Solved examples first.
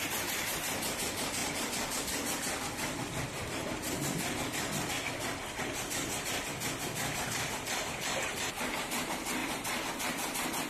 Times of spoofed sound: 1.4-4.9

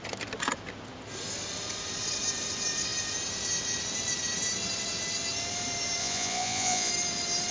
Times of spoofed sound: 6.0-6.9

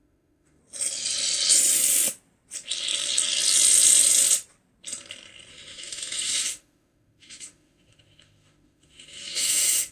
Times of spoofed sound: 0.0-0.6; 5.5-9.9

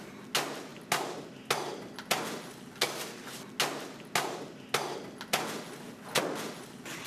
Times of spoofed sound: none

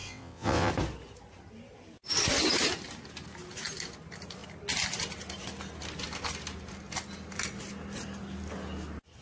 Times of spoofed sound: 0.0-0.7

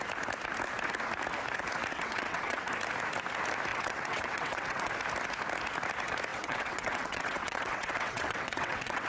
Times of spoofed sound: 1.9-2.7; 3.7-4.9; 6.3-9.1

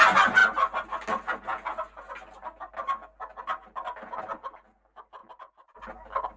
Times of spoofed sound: none

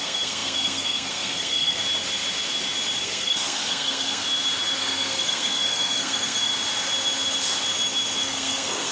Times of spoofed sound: 0.0-1.8; 3.0-4.2; 4.8-6.5; 8.2-8.9